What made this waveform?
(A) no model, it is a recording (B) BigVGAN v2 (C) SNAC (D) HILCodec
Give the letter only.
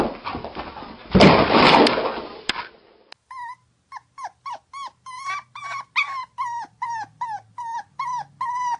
A